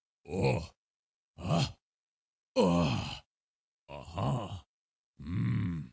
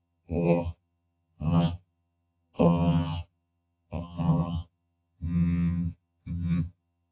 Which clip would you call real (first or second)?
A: first